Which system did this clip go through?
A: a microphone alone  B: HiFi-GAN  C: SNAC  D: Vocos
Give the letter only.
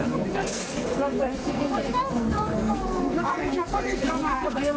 C